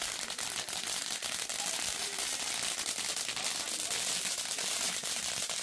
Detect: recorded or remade remade